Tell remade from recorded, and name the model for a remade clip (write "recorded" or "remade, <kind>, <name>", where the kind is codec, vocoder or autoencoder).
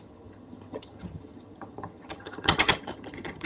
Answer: remade, vocoder, HiFi-GAN